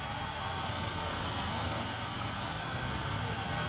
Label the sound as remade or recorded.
remade